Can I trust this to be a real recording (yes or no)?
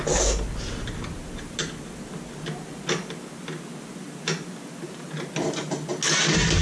yes